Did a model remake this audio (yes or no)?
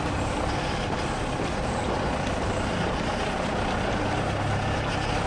no